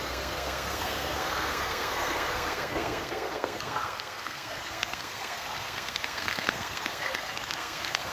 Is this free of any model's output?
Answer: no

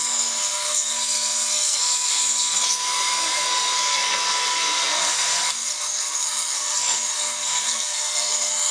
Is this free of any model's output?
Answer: no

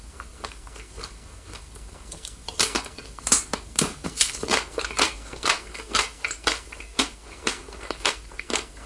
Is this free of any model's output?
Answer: no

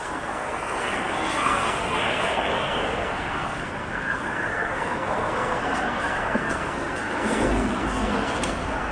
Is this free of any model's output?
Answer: no